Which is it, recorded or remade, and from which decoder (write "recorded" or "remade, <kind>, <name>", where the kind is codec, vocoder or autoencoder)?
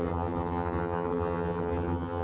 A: remade, vocoder, HiFi-GAN